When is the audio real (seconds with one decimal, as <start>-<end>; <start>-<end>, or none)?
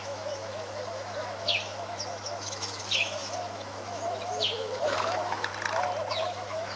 5.5-6.1